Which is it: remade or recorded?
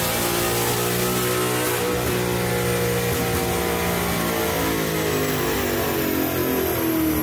recorded